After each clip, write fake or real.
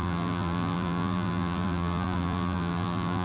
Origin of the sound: fake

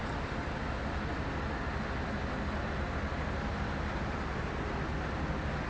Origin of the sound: real